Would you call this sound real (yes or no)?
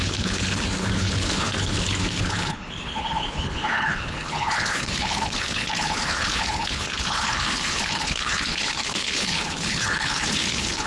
no